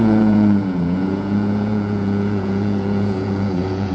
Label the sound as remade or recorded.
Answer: remade